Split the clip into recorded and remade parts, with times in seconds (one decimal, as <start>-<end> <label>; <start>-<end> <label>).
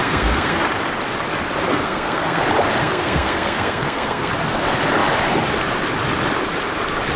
0.0-0.6 remade; 0.6-1.7 recorded; 1.7-2.4 remade; 2.4-2.8 recorded; 2.8-4.3 remade; 4.3-7.2 recorded